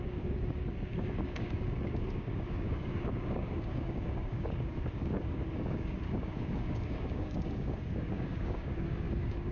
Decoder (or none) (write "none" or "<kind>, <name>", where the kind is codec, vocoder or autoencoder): codec, DAC